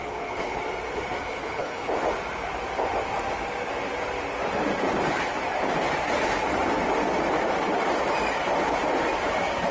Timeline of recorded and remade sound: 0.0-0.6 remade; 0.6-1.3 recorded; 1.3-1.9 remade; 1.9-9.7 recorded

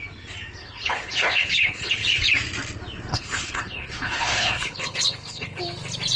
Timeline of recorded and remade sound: 0.0-0.6 recorded; 0.6-2.2 remade; 2.2-3.1 recorded; 3.1-5.6 remade; 5.6-6.2 recorded

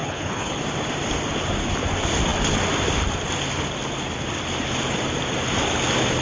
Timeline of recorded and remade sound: 0.0-0.6 remade; 0.6-6.2 recorded

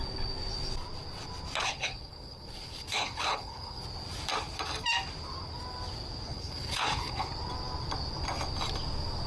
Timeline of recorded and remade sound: 0.0-1.6 recorded; 1.6-3.8 remade; 3.8-6.3 recorded; 6.3-7.3 remade; 7.3-9.3 recorded

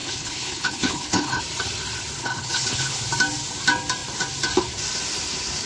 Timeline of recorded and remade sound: 0.0-1.4 remade; 1.4-2.2 recorded; 2.2-3.0 remade; 3.0-5.7 recorded